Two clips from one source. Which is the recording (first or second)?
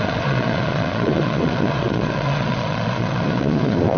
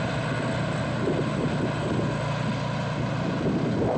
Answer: second